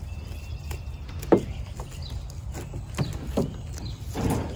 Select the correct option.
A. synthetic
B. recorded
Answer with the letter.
B